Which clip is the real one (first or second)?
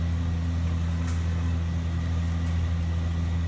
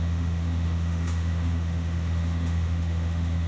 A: first